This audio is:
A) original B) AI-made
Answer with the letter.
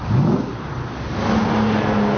A